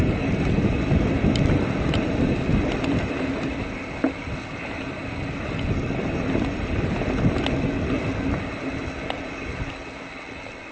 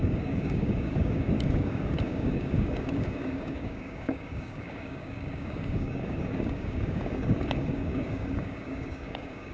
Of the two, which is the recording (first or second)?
first